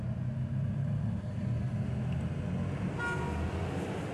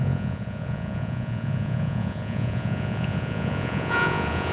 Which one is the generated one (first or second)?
second